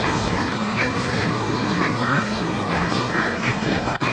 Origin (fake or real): fake